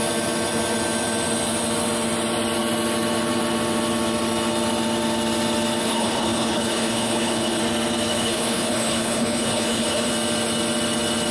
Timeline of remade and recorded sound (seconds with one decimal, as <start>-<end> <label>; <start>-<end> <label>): 0.0-5.8 recorded; 5.8-7.6 remade; 7.6-8.1 recorded; 8.1-10.1 remade; 10.1-11.3 recorded